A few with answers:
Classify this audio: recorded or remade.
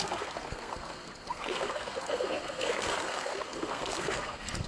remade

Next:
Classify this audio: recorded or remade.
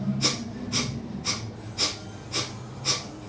recorded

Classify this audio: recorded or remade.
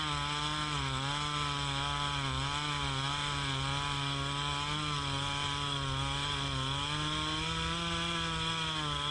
recorded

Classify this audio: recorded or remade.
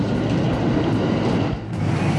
recorded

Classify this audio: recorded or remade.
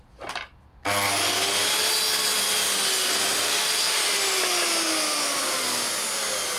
recorded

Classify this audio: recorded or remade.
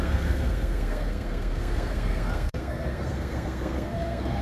remade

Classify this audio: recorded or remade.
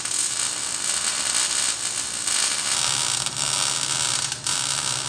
recorded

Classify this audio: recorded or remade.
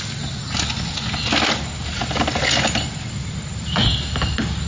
recorded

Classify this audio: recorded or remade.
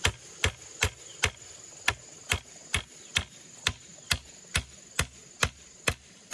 recorded